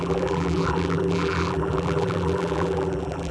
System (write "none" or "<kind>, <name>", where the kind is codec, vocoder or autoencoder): vocoder, BigVGAN v2